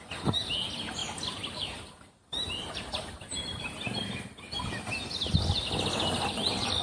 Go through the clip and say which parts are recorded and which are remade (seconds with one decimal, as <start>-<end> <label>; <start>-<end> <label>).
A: 0.0-6.8 recorded